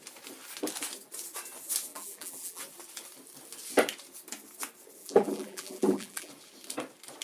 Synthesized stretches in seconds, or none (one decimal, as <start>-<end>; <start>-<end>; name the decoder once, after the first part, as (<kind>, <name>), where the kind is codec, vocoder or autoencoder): 1.9-2.6 (vocoder, BigVGAN v2); 5.0-6.3